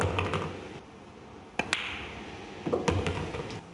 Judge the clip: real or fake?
real